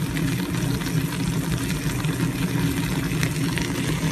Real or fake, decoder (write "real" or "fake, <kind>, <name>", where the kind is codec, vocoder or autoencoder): real